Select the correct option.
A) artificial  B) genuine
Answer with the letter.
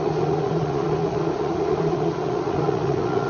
A